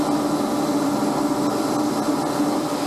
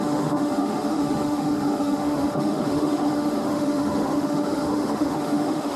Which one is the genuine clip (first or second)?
first